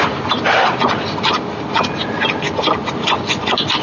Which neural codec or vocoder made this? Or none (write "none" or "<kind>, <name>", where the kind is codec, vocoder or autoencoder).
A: none